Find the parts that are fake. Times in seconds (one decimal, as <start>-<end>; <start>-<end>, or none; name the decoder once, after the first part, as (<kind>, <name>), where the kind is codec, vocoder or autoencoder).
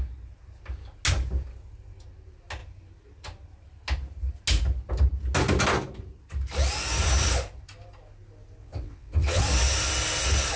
8.6-9.4 (vocoder, WaveNeXt)